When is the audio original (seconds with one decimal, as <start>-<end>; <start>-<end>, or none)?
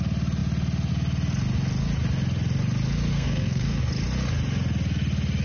0.0-3.1; 3.8-5.4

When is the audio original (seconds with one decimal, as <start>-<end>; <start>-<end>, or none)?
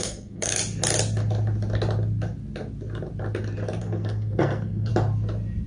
0.6-3.8; 4.9-5.7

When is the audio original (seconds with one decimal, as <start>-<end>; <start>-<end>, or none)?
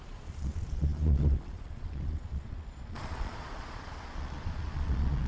none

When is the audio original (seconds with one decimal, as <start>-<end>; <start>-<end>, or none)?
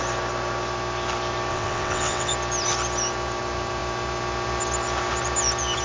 0.0-1.5; 2.3-5.8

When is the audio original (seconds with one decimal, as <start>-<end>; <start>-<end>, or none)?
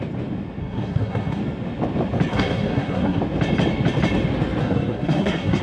0.0-0.6; 1.4-2.3; 3.2-4.6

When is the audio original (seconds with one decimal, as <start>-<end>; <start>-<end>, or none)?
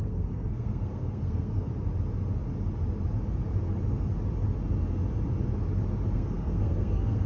1.7-6.1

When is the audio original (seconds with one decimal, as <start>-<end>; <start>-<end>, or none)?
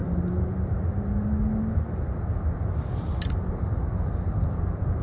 0.0-5.0